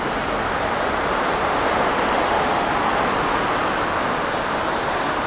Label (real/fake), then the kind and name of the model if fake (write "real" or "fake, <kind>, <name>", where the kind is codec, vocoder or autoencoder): real